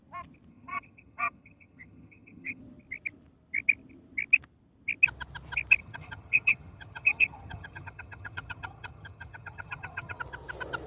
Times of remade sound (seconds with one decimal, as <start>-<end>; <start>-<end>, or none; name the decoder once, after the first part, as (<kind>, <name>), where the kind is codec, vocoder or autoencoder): 0.5-2.6 (vocoder, HiFi-GAN); 5.8-10.2